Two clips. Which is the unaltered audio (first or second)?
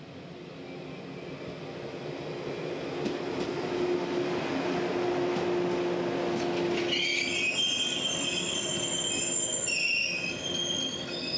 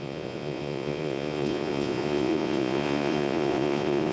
first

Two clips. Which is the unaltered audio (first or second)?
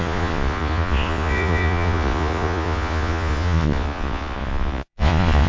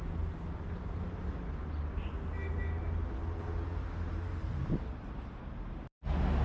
second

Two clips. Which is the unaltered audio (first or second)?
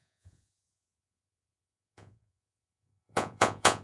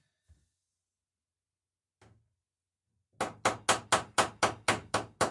second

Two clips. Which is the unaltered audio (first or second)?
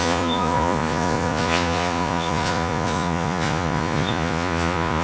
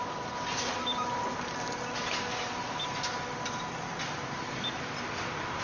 second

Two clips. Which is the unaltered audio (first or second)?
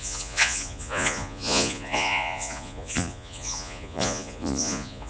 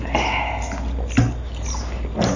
second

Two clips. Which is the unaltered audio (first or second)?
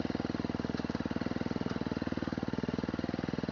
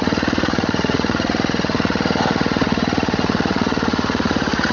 first